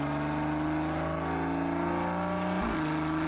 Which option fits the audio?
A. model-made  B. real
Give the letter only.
B